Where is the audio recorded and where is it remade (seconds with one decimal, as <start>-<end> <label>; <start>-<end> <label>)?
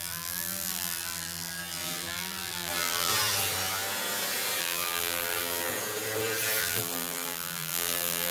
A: 0.0-3.1 remade; 3.1-4.6 recorded; 4.6-5.7 remade; 5.7-6.6 recorded; 6.6-8.3 remade